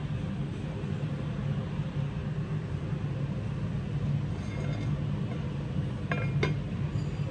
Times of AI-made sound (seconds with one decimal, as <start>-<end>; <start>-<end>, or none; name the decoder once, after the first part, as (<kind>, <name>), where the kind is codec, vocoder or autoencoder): none